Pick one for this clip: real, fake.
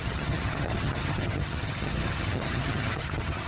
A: fake